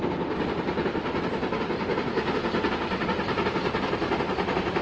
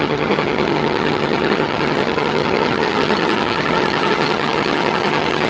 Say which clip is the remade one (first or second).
second